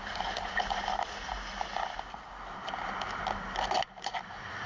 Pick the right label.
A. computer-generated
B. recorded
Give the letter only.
B